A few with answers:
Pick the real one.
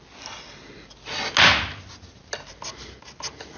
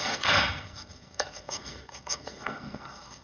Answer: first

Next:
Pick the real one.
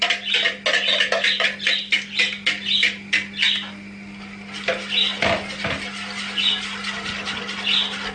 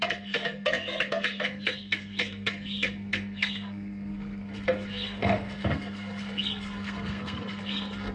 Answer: first